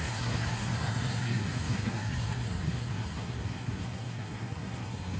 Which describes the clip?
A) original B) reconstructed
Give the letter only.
B